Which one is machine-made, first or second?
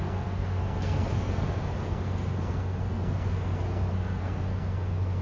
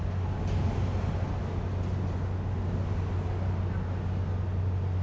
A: first